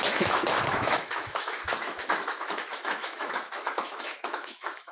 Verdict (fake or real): fake